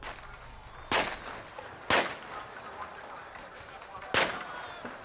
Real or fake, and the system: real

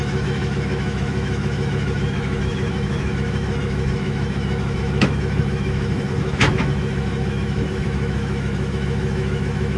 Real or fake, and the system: fake, autoencoder, DAC-VAE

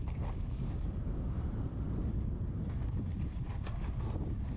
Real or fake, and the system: real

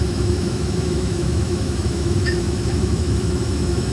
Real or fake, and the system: fake, autoencoder, DAC-VAE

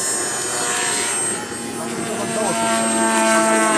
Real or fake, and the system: real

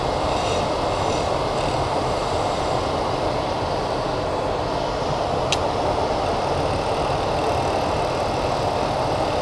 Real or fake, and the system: real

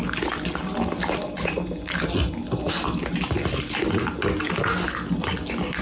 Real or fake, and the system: real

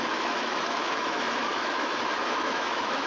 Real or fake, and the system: fake, autoencoder, DAC-VAE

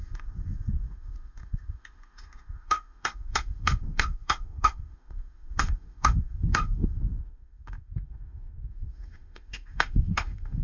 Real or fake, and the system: fake, autoencoder, DAC-VAE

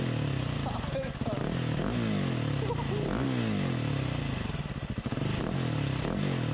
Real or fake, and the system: real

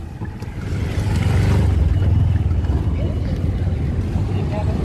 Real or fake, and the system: real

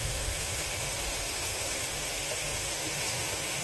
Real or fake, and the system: fake, autoencoder, DAC-VAE